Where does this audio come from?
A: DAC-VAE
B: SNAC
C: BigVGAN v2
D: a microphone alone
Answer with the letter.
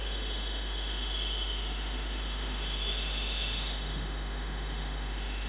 A